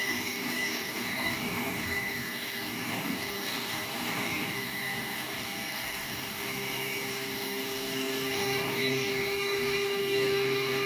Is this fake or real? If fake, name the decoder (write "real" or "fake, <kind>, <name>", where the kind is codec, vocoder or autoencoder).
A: fake, codec, DAC